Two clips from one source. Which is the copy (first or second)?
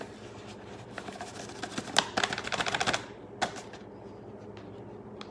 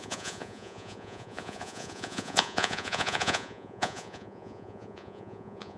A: second